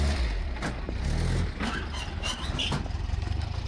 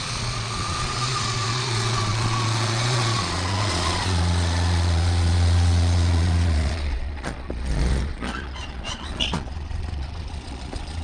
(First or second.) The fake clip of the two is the second